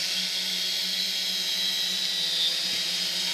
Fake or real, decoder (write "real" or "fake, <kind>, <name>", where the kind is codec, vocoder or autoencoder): real